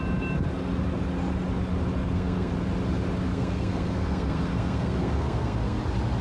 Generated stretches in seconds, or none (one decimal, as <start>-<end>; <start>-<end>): 2.0-2.5; 3.3-5.8